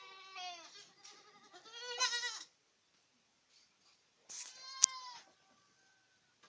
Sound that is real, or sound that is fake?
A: real